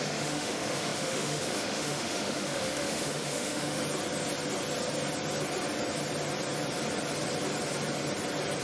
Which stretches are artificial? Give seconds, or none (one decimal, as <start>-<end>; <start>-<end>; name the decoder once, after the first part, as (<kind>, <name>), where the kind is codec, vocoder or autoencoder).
0.0-3.8 (autoencoder, DAC-VAE)